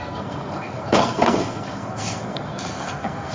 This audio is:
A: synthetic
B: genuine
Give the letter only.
A